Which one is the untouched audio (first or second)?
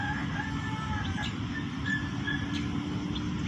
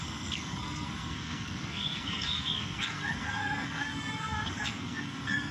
first